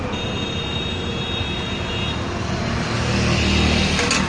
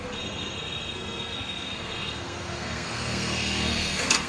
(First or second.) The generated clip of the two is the second